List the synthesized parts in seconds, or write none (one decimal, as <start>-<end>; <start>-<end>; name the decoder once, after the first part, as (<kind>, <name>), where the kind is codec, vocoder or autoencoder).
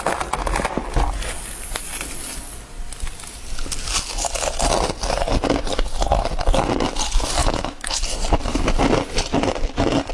7.4-8.0 (autoencoder, DAC-VAE)